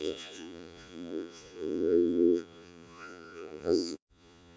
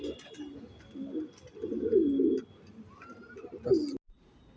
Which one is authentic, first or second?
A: second